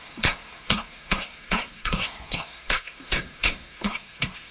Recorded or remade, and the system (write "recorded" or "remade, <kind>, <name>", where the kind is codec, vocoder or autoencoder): remade, codec, SNAC